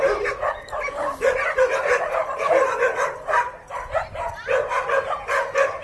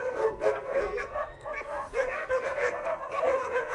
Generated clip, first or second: second